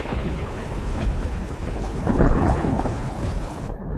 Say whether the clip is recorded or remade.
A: remade